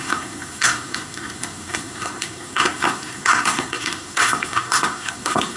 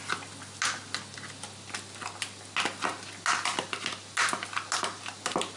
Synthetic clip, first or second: first